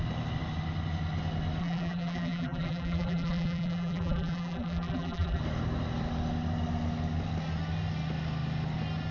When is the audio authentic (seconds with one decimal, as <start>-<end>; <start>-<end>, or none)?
0.0-1.6; 5.4-9.1